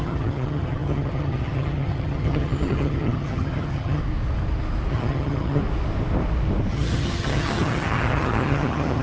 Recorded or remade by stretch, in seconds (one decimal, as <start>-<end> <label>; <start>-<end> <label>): 0.0-4.0 remade; 4.0-4.9 recorded; 4.9-5.6 remade; 5.6-6.7 recorded; 6.7-9.0 remade